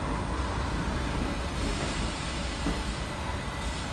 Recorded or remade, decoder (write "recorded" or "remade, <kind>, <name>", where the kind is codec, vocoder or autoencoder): recorded